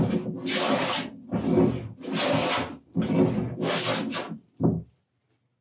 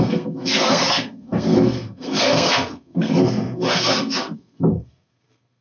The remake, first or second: second